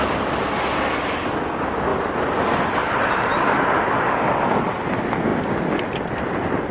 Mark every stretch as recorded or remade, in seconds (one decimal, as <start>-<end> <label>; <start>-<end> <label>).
0.0-6.7 recorded